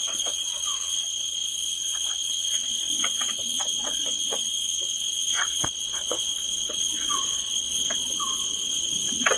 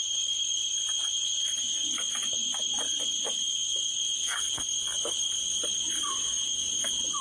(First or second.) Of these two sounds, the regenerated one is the first